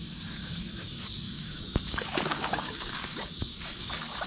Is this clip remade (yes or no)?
yes